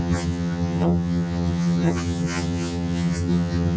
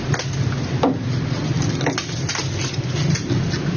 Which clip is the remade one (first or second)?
first